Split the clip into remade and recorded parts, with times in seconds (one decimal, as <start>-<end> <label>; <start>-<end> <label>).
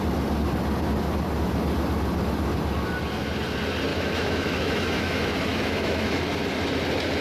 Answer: 0.0-3.9 recorded; 3.9-6.2 remade; 6.2-7.2 recorded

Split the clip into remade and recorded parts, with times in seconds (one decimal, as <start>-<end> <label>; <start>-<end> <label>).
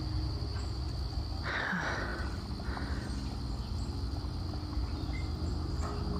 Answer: 0.0-6.2 recorded